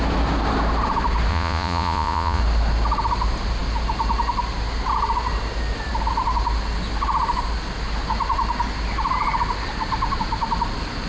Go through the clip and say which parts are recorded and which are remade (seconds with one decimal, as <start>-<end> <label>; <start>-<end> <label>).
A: 0.0-1.3 recorded; 1.3-2.4 remade; 2.4-11.1 recorded